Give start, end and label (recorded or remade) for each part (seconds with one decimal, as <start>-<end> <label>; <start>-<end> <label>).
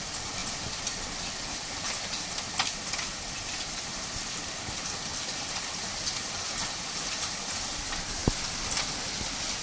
0.0-9.6 recorded